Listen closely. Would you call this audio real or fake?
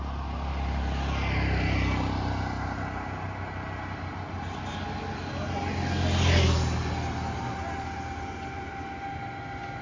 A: real